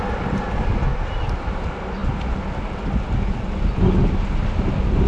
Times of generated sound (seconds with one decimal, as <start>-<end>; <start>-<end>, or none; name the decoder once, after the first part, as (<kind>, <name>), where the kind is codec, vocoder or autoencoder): 0.9-1.4 (vocoder, BigVGAN v2)